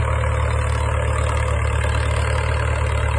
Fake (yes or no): no